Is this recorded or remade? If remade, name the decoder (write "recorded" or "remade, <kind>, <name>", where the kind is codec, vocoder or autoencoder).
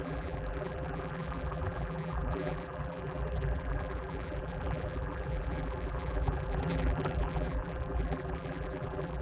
remade, vocoder, BigVGAN v2